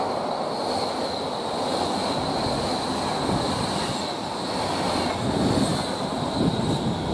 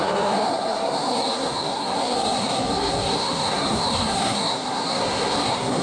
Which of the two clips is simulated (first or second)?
second